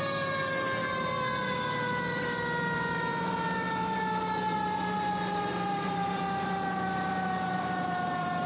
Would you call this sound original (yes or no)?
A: no